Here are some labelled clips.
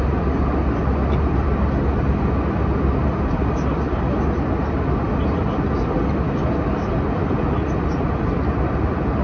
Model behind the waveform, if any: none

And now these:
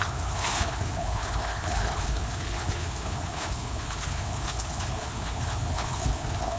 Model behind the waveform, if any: codec, HILCodec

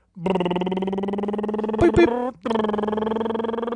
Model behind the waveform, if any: none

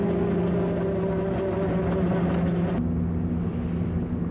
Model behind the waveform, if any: none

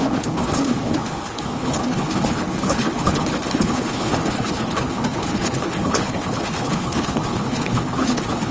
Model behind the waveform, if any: codec, HILCodec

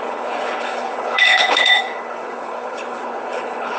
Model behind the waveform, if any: codec, HILCodec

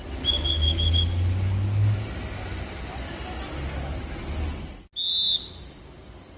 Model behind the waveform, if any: none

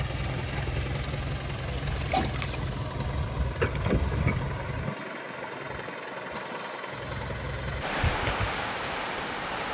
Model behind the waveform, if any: none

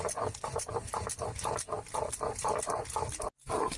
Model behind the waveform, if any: none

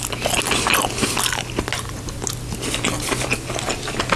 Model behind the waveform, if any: none